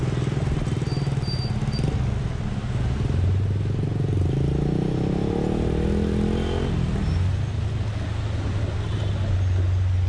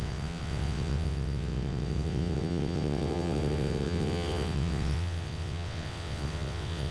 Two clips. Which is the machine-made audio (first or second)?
second